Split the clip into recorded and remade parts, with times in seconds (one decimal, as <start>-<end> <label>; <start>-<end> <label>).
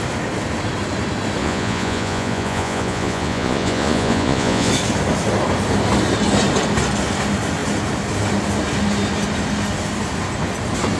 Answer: 0.0-1.4 recorded; 1.4-4.7 remade; 4.7-11.0 recorded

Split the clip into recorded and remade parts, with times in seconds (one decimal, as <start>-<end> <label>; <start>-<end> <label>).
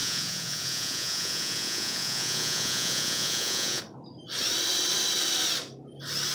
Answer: 0.0-3.8 remade; 3.8-6.3 recorded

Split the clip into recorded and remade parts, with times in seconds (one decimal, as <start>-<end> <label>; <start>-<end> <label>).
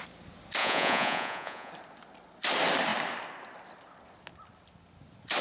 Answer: 0.0-0.6 recorded; 0.6-1.7 remade; 1.7-5.4 recorded